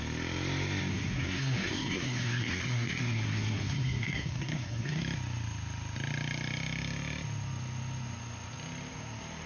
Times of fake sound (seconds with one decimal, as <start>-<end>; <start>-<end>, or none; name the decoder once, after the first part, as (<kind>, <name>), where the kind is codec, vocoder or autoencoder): 0.9-5.0 (codec, SNAC)